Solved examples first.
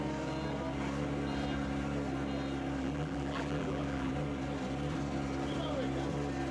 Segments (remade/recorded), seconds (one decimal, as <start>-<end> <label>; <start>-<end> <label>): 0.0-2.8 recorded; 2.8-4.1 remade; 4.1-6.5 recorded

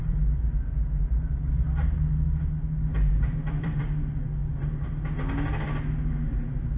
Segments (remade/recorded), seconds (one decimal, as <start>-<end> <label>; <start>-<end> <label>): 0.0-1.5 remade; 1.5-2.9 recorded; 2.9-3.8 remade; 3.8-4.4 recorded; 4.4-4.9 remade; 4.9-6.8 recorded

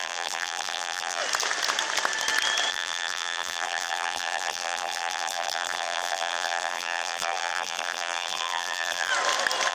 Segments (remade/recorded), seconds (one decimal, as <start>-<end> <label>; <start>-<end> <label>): 0.0-1.2 remade; 1.2-2.7 recorded; 2.7-9.1 remade; 9.1-9.7 recorded

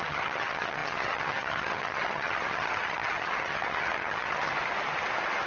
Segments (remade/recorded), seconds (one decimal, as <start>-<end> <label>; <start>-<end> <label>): 0.0-4.5 remade; 4.5-5.5 recorded